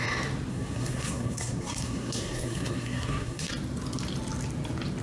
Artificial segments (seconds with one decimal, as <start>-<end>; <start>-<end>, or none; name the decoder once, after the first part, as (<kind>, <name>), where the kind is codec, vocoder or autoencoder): 0.5-3.5 (codec, SNAC)